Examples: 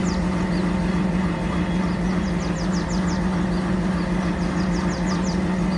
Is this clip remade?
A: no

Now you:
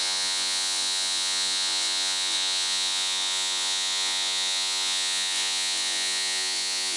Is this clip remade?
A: yes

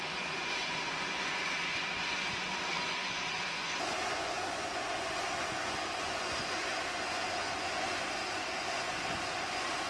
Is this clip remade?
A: yes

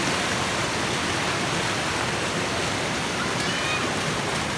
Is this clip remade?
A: no